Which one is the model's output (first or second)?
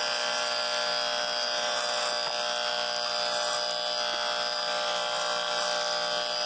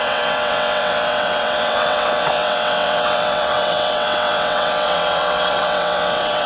second